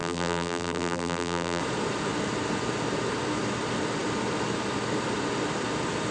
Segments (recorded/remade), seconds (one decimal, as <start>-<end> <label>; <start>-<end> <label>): 0.0-1.6 remade; 1.6-6.1 recorded